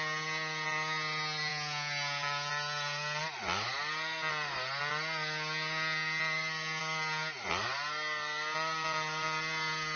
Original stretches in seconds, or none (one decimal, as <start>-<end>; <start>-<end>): 0.0-10.0

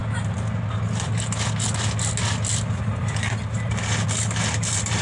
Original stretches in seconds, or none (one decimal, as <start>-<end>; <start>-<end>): 0.0-5.0

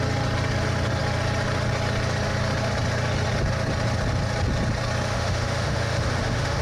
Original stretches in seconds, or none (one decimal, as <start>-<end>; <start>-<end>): 0.0-5.1

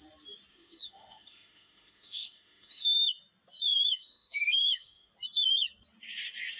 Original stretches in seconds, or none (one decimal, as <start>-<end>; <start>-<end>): 0.0-0.5; 3.0-3.7; 5.1-6.6

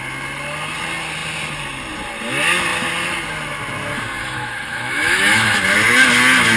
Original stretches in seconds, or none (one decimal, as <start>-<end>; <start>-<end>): 0.0-4.2; 5.6-6.6